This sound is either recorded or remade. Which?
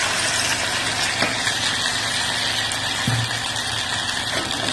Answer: recorded